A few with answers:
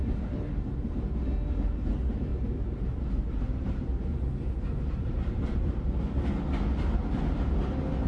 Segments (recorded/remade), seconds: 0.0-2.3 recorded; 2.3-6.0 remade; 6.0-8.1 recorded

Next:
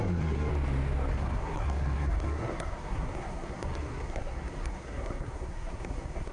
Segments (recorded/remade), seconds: 0.0-0.5 remade; 0.5-1.1 recorded; 1.1-6.3 remade

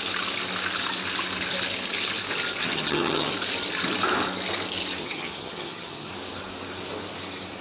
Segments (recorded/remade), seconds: 0.0-2.6 recorded; 2.6-3.3 remade; 3.3-5.0 recorded; 5.0-6.1 remade; 6.1-7.6 recorded

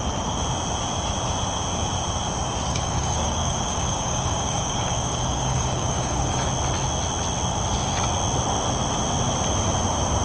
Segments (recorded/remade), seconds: 0.0-2.7 recorded; 2.7-6.5 remade; 6.5-10.2 recorded

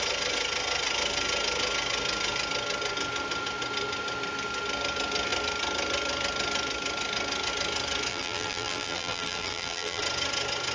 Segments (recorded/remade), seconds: 0.0-8.1 recorded; 8.1-10.0 remade; 10.0-10.7 recorded

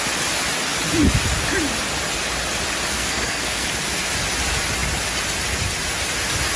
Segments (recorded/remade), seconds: 0.0-2.9 recorded; 2.9-3.7 remade; 3.7-6.6 recorded

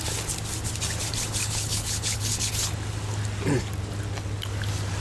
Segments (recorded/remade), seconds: 0.0-1.4 recorded; 1.4-2.5 remade; 2.5-5.0 recorded